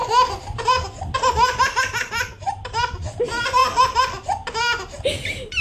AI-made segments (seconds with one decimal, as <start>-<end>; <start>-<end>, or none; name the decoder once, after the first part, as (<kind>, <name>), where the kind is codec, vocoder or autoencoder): none